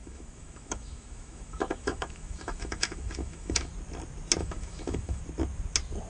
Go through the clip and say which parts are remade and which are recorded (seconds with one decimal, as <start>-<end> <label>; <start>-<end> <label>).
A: 0.0-3.7 remade; 3.7-4.4 recorded; 4.4-5.2 remade; 5.2-6.1 recorded